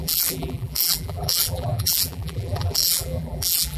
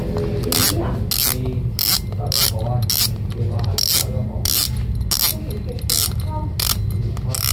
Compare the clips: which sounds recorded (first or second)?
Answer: second